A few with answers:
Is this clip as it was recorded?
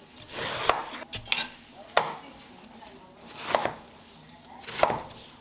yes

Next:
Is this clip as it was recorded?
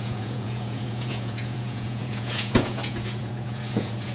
no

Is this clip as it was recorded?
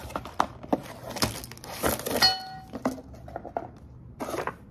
yes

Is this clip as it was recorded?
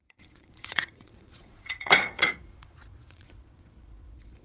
no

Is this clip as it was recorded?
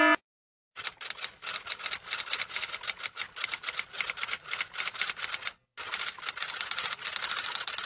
yes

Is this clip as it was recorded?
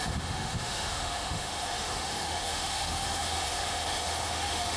no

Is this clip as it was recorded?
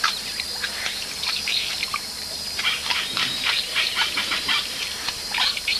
no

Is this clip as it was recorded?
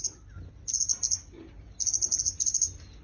yes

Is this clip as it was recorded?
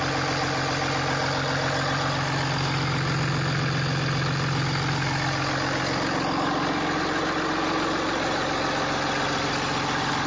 yes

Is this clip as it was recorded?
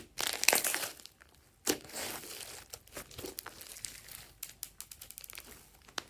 yes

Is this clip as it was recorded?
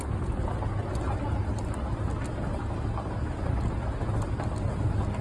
yes